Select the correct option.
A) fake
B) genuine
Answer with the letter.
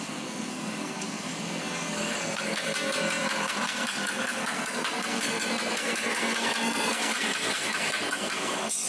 A